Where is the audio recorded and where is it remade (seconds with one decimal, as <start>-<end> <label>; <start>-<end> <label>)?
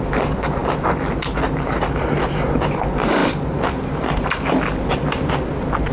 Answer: 0.0-5.9 recorded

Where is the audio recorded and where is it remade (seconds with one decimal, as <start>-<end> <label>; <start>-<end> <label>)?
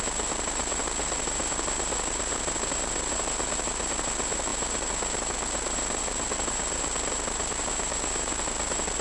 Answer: 0.0-9.0 recorded